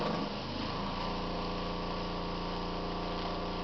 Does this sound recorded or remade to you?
recorded